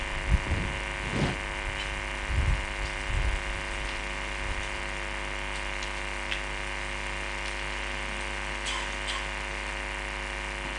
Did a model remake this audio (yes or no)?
no